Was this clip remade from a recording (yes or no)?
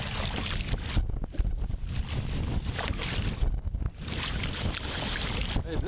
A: no